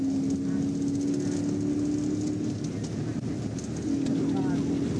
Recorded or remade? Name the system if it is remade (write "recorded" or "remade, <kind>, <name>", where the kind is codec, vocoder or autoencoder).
recorded